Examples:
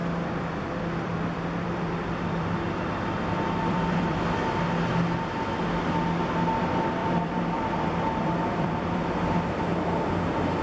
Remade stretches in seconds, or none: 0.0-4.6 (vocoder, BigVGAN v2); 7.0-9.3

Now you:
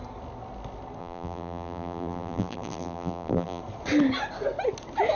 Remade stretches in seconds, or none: 1.0-3.6 (vocoder, BigVGAN v2)